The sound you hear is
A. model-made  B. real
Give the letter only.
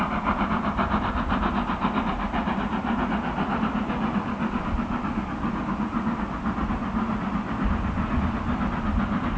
B